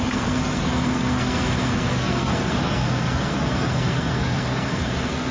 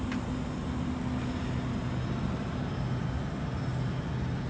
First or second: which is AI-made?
first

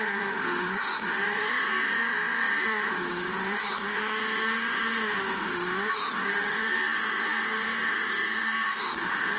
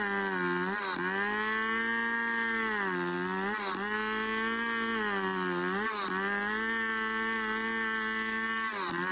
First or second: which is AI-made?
first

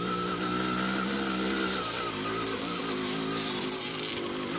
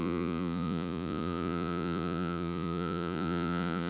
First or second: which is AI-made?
second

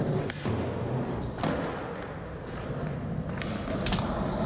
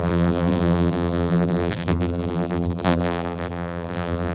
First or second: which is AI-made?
second